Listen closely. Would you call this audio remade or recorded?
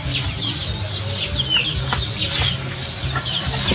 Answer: recorded